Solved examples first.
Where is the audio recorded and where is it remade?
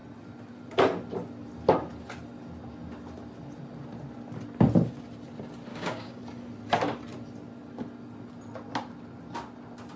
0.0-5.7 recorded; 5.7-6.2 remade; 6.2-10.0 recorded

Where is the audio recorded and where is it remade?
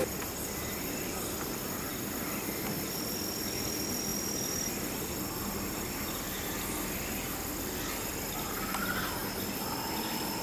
0.0-10.4 recorded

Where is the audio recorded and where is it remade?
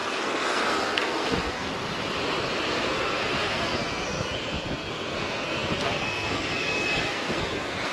0.0-1.7 remade; 1.7-2.7 recorded; 2.7-7.9 remade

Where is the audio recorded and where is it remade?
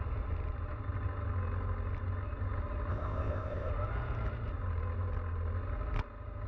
0.0-2.9 recorded; 2.9-3.7 remade; 3.7-6.5 recorded